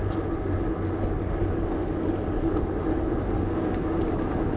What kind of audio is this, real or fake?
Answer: real